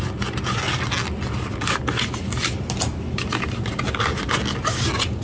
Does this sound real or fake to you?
real